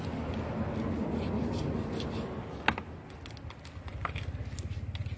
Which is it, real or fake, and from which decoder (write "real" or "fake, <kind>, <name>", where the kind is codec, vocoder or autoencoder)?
real